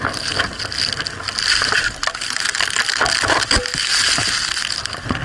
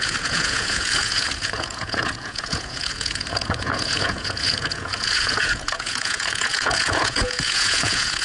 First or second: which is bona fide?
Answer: first